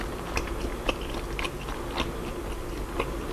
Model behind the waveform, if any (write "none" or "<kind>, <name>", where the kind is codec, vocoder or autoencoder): none